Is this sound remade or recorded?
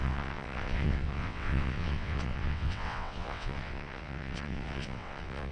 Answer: remade